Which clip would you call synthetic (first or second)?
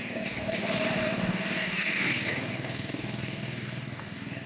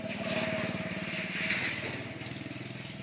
first